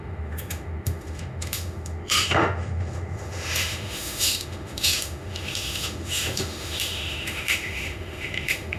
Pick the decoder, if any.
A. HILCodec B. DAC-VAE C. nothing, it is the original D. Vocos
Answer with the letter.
B